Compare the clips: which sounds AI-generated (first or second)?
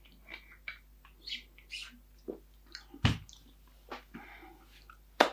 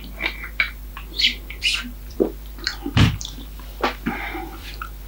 second